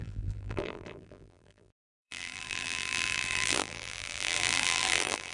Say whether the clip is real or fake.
fake